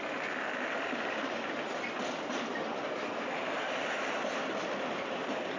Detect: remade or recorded recorded